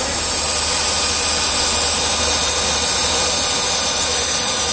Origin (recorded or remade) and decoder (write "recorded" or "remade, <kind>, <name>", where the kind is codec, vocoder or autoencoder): recorded